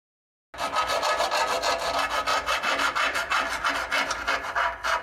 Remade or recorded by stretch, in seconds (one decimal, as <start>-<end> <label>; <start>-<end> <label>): 0.0-2.3 recorded; 2.3-3.7 remade; 3.7-5.0 recorded